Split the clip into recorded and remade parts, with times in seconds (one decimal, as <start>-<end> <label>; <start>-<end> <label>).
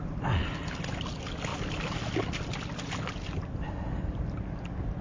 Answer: 0.0-5.0 recorded